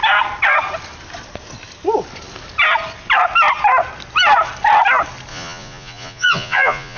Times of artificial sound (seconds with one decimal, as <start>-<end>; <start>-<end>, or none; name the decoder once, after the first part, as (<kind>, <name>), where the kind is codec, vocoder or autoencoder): 5.3-7.0 (vocoder, Vocos)